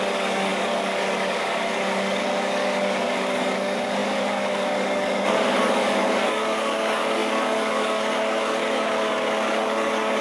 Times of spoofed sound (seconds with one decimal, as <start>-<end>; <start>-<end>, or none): 0.0-10.2